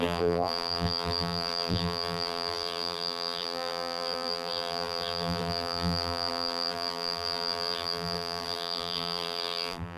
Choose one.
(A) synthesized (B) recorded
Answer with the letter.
A